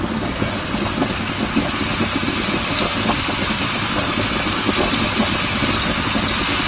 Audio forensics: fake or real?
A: real